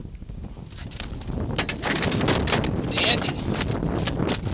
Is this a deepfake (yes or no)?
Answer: no